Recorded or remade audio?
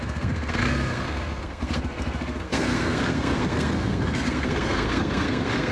remade